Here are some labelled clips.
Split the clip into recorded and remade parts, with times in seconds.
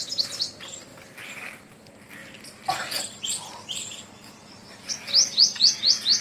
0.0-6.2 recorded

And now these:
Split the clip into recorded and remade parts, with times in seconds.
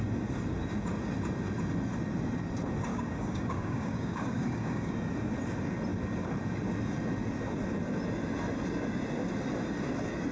0.0-2.9 recorded; 2.9-4.9 remade; 4.9-10.3 recorded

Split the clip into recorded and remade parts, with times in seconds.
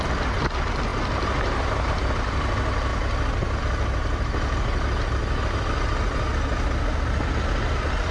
0.0-8.1 recorded